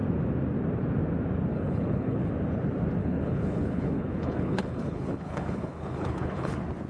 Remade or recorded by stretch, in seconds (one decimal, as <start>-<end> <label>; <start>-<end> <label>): 0.0-1.5 recorded; 1.5-2.3 remade; 2.3-3.0 recorded; 3.0-6.5 remade; 6.5-6.9 recorded